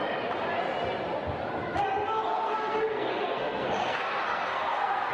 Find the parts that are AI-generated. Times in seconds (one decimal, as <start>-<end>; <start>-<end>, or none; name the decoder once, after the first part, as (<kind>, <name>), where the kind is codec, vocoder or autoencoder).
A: 2.3-5.1 (codec, SNAC)